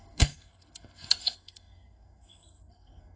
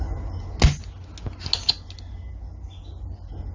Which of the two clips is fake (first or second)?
first